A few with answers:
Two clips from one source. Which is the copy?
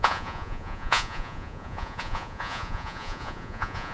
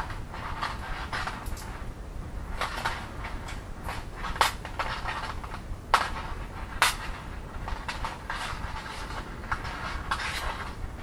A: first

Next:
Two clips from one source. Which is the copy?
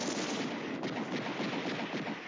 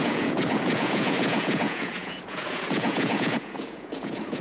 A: second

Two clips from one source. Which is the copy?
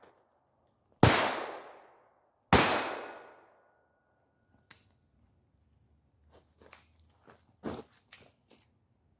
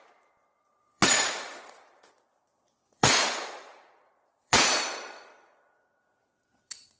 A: second